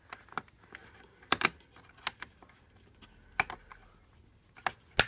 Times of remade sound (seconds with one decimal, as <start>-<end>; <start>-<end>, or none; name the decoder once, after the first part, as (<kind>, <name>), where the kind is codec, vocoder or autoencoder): 0.8-1.6 (vocoder, BigVGAN v2)